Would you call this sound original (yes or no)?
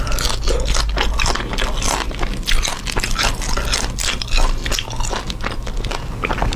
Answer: yes